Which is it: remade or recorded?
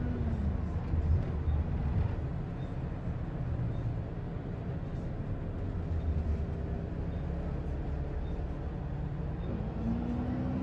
recorded